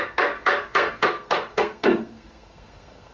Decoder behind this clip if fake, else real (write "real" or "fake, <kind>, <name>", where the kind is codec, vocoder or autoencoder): fake, codec, SNAC